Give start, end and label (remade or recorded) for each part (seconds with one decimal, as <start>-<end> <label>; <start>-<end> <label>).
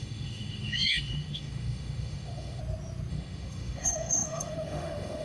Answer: 0.0-2.6 remade; 2.6-3.1 recorded; 3.1-5.2 remade